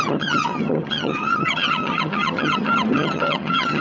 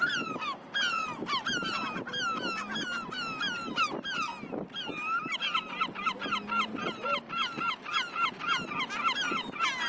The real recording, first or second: second